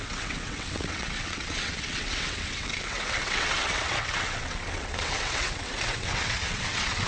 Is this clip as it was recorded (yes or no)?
no